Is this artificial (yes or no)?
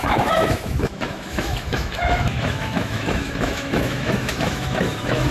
yes